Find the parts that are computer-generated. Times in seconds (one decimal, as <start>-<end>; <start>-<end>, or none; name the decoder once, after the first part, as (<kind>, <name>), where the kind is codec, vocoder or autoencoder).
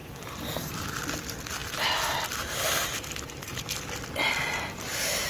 0.0-0.7 (vocoder, BigVGAN v2); 1.6-3.6